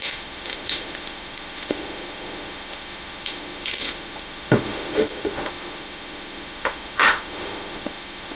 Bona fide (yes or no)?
no